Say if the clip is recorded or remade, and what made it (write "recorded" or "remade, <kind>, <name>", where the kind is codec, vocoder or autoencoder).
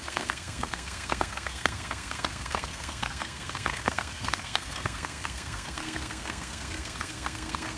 remade, codec, SNAC